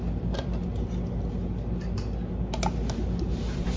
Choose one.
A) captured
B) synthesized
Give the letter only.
A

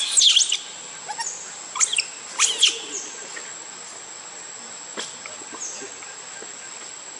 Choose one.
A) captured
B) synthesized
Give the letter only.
A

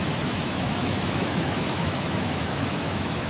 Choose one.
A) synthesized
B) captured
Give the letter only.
A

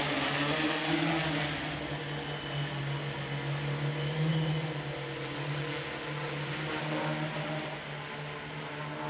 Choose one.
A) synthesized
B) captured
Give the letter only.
B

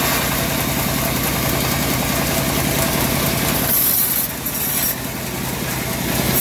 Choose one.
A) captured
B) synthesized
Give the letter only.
A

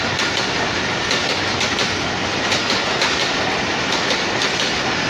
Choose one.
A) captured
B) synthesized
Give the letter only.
A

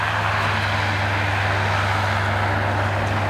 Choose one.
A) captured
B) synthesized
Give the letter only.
A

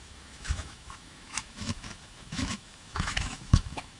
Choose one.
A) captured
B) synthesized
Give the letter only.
B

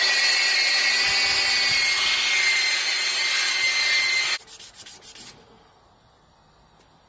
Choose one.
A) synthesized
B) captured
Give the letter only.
B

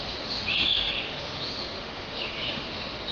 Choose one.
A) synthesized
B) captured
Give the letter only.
A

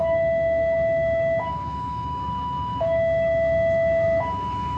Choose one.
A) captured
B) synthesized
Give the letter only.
B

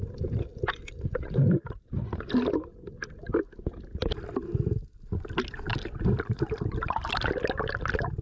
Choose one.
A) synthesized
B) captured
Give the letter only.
B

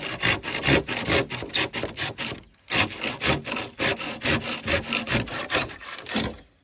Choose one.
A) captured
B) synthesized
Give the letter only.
A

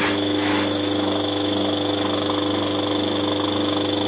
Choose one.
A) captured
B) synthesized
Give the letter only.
B